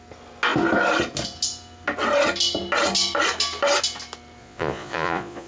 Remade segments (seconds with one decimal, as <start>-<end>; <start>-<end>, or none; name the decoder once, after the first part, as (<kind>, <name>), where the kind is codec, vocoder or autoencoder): 4.4-5.5 (vocoder, Vocos)